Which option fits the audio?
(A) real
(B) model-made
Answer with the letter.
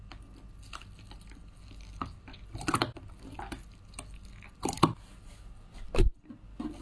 A